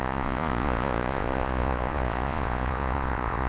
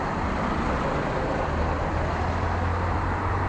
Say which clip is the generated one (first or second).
first